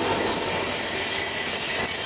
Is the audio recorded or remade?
recorded